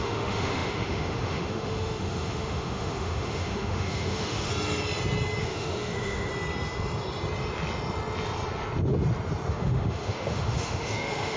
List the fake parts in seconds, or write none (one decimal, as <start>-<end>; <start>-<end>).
0.0-4.5; 5.4-6.3; 9.5-11.4